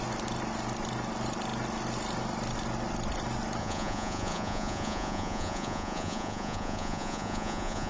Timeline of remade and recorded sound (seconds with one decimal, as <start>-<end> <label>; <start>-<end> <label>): 0.0-3.6 recorded; 3.6-7.9 remade